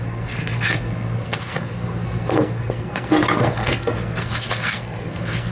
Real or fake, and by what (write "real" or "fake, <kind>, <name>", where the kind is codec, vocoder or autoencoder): fake, codec, SNAC